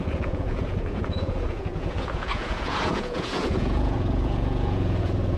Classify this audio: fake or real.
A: fake